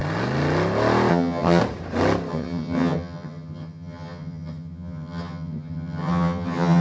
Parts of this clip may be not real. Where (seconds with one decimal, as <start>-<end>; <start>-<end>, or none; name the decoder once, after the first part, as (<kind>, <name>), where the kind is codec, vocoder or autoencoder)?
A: 1.1-1.6 (vocoder, HiFi-GAN); 2.3-6.8